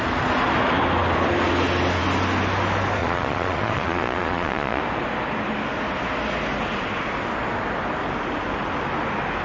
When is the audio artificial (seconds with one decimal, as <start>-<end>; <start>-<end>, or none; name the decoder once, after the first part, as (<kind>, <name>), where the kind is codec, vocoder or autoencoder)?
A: 3.0-4.8 (vocoder, Vocos)